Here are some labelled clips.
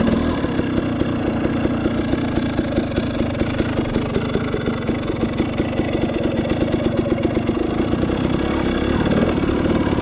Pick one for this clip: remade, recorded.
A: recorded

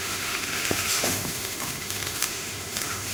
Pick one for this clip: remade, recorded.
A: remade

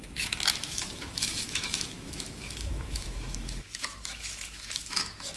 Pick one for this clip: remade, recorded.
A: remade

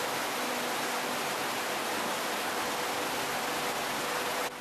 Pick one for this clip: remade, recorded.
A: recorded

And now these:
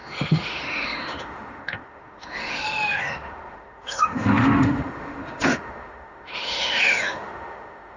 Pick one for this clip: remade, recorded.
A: remade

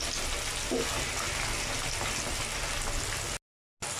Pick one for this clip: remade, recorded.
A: recorded